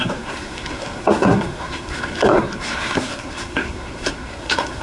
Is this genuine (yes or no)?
no